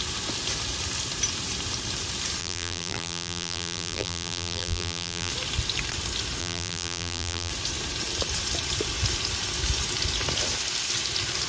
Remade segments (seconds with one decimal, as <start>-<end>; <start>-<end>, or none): 2.4-5.3; 6.4-7.5